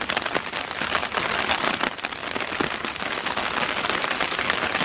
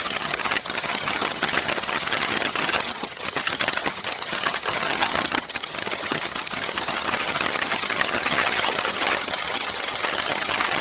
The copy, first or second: second